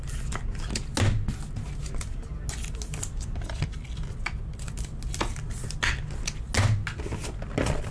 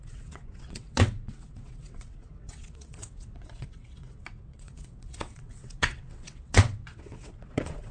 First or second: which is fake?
second